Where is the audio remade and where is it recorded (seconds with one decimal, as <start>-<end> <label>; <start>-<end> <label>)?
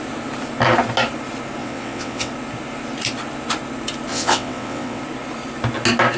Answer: 0.0-1.6 recorded; 1.6-2.3 remade; 2.3-4.1 recorded; 4.1-5.0 remade; 5.0-6.2 recorded